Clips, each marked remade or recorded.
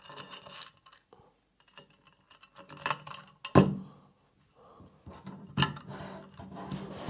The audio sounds recorded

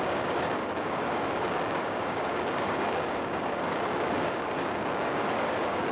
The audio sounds remade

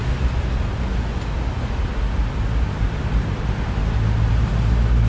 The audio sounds recorded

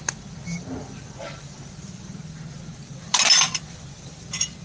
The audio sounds recorded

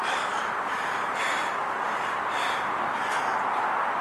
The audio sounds recorded